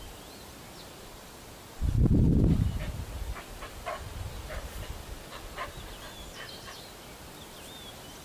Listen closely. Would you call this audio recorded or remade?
recorded